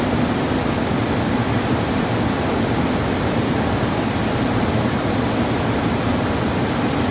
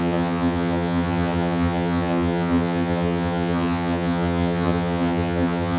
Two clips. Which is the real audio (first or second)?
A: first